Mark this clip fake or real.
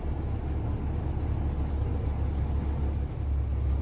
real